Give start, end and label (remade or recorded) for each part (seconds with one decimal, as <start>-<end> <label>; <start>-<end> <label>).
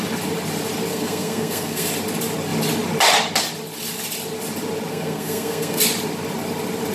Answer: 0.0-0.9 recorded; 0.9-1.9 remade; 1.9-4.9 recorded; 4.9-5.8 remade; 5.8-6.9 recorded